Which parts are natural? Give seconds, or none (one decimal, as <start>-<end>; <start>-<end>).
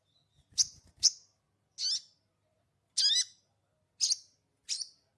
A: 0.0-5.2